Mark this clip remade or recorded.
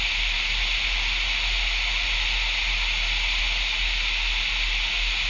recorded